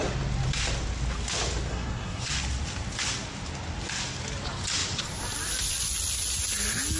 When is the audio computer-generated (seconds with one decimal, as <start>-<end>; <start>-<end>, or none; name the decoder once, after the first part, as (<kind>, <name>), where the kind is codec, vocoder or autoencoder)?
1.7-2.3 (codec, SNAC)